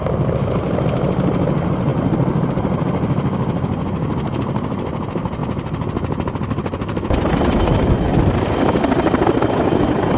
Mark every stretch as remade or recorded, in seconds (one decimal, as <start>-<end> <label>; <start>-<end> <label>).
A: 0.0-5.4 recorded; 5.4-8.2 remade; 8.2-10.2 recorded